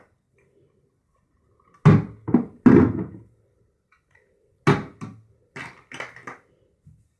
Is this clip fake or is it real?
real